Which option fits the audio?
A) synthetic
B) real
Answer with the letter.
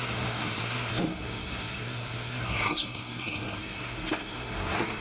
A